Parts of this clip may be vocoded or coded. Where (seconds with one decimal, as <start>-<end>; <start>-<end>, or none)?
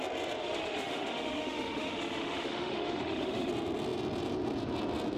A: 0.4-3.5